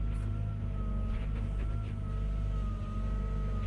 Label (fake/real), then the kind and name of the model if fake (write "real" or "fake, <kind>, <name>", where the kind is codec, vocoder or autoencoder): real